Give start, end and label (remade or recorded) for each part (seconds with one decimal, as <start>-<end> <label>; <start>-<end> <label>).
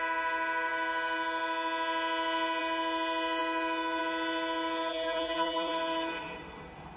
0.0-4.9 recorded; 4.9-5.7 remade; 5.7-7.0 recorded